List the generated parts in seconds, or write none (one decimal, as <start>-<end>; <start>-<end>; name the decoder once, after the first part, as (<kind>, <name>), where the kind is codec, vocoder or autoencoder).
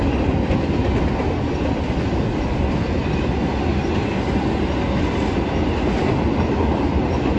none